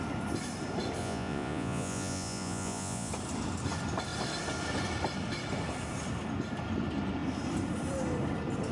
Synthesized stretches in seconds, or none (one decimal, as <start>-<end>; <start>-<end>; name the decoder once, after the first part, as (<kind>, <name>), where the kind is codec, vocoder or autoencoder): 1.0-3.1 (vocoder, Vocos)